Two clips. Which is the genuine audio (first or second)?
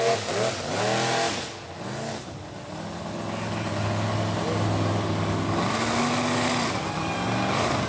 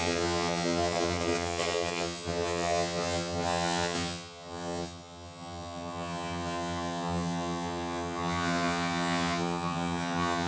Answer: first